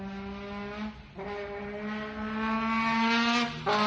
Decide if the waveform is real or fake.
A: real